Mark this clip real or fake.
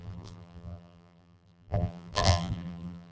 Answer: fake